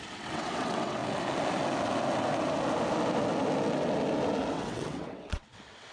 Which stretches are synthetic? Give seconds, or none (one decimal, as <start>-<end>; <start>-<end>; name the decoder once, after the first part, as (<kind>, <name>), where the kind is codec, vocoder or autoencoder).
0.0-1.0 (vocoder, WaveNeXt); 4.5-5.9

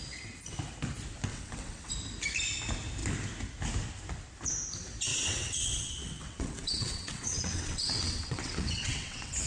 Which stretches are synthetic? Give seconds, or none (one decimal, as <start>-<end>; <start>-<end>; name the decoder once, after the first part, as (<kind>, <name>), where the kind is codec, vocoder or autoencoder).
1.3-1.9 (vocoder, WaveNeXt); 5.1-9.5

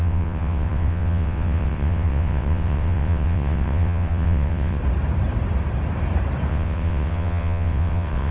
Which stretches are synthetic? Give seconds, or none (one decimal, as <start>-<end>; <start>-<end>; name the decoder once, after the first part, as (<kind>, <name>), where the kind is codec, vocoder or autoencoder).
0.0-4.8 (vocoder, WaveNeXt); 6.5-8.3

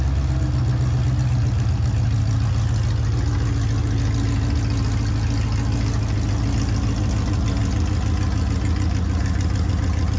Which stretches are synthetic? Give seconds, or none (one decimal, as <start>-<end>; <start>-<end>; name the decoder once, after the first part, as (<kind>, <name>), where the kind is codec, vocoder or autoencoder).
none